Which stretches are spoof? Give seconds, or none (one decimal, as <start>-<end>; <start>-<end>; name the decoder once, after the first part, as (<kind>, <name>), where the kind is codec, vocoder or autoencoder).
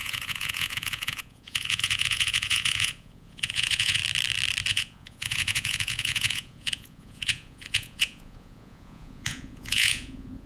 0.0-4.0 (vocoder, Vocos); 4.7-10.5